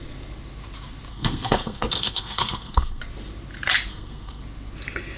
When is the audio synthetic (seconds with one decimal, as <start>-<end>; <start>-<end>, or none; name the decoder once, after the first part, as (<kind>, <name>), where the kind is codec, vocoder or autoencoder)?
1.1-3.0 (codec, SNAC); 3.9-4.4